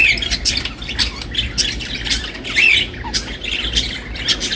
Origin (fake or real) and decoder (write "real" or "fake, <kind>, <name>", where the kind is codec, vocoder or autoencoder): real